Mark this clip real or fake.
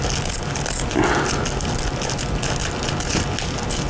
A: real